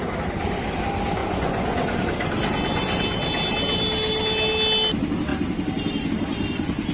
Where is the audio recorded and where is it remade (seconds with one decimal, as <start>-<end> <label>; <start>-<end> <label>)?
0.0-1.2 recorded; 1.2-2.0 remade; 2.0-6.9 recorded